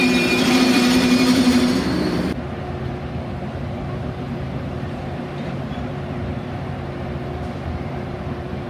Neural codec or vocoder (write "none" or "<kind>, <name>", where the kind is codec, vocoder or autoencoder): vocoder, BigVGAN v2